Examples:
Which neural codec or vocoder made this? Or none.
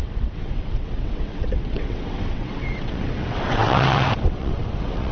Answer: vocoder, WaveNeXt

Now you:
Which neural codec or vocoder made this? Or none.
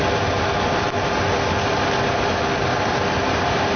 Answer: none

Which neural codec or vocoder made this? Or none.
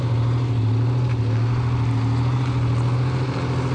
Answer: none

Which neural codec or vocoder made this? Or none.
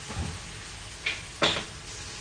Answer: none